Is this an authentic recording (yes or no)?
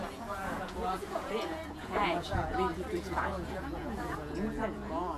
no